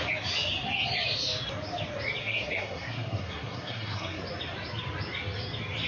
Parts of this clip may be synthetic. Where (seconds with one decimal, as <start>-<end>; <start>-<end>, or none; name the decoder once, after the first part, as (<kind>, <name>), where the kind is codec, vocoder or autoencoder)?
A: 2.2-4.2 (codec, SNAC)